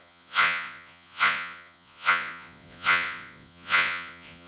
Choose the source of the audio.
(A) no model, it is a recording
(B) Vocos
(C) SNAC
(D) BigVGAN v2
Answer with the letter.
B